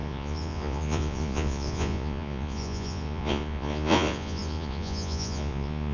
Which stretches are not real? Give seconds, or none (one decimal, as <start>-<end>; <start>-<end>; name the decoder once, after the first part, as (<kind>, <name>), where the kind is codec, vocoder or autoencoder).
0.0-5.9 (vocoder, Vocos)